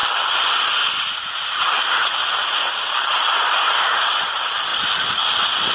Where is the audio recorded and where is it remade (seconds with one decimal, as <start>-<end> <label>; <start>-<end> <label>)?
0.0-5.7 recorded